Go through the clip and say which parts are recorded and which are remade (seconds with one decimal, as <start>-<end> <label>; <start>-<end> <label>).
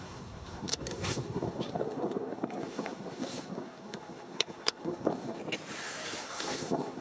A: 0.0-5.4 remade; 5.4-6.2 recorded; 6.2-7.0 remade